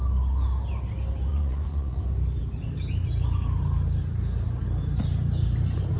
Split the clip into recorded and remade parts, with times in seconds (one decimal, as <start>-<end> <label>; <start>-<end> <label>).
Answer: 0.0-1.3 recorded; 1.3-2.0 remade; 2.0-6.0 recorded